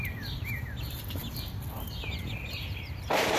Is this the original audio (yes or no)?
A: yes